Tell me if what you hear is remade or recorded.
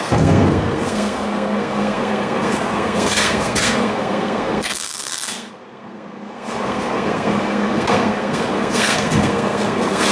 remade